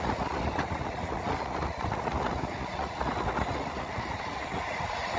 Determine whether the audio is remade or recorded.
remade